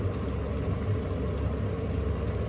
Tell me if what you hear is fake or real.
real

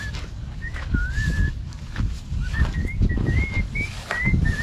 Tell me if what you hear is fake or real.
fake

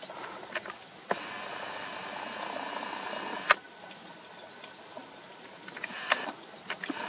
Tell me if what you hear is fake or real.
real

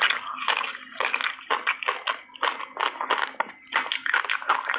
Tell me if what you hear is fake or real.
real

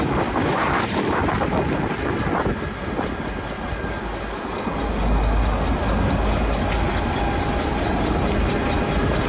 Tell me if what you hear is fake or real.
real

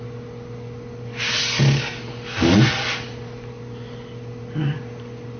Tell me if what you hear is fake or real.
real